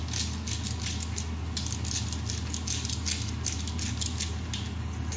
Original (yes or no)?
yes